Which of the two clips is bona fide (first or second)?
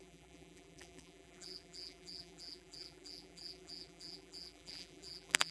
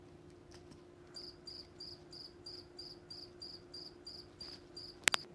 second